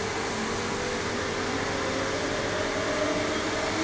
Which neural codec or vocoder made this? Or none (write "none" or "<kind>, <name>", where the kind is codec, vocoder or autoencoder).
none